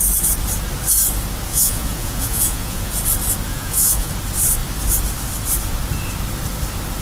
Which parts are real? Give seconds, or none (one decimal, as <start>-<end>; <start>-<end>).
0.0-1.5; 2.9-3.5; 4.1-7.0